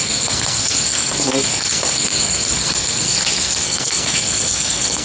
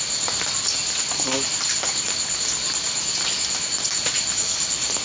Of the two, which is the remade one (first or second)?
first